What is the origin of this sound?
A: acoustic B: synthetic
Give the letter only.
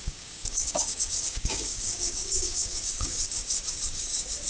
B